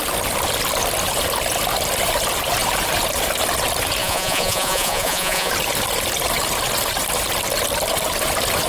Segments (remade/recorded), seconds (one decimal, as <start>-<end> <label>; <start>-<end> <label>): 0.0-4.0 recorded; 4.0-5.5 remade; 5.5-8.7 recorded